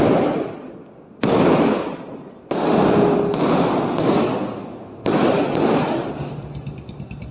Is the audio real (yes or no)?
yes